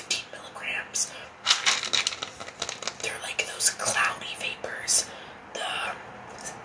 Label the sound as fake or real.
real